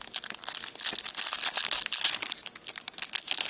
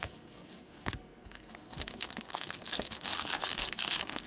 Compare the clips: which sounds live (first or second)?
first